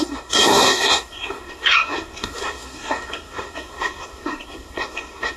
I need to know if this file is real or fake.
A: fake